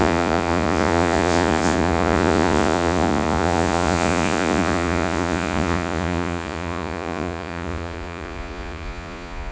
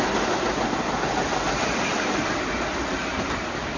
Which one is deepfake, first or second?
first